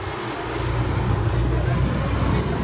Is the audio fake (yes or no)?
no